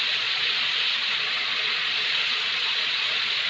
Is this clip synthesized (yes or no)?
yes